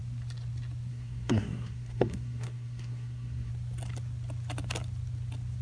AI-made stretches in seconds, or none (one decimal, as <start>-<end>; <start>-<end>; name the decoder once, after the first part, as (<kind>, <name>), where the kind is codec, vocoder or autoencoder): 0.9-3.5 (codec, SNAC)